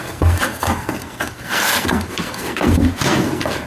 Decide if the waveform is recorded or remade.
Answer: remade